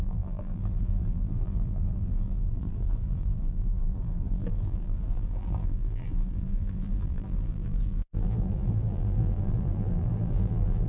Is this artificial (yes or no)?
yes